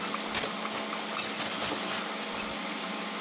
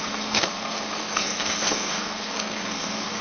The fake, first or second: second